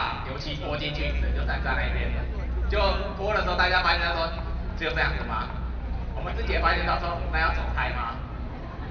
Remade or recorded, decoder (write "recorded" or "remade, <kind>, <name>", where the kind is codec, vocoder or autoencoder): recorded